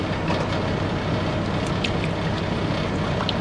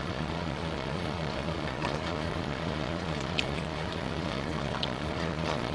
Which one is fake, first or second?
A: second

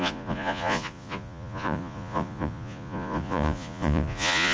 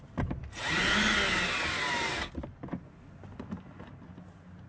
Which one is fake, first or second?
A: first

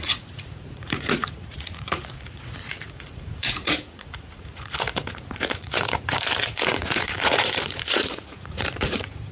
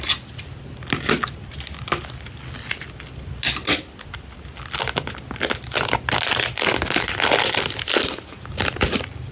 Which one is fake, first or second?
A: first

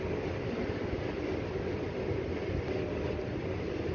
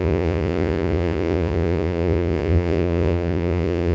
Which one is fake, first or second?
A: second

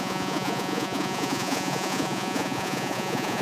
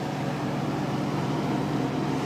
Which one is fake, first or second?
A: first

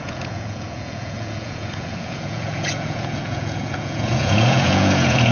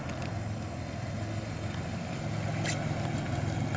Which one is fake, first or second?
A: first